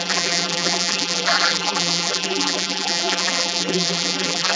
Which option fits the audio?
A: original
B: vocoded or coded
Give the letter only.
B